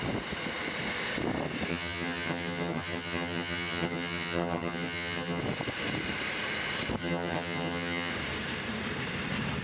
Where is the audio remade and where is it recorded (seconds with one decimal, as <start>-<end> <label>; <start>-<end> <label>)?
0.0-1.7 recorded; 1.7-5.4 remade; 5.4-7.0 recorded; 7.0-8.1 remade; 8.1-9.6 recorded